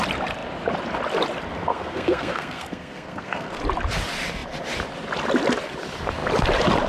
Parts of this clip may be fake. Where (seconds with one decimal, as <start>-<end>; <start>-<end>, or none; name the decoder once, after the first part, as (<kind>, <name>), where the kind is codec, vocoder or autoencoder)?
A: 1.6-3.6 (codec, SNAC)